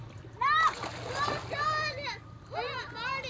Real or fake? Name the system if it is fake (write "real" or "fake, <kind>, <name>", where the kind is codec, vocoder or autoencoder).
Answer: real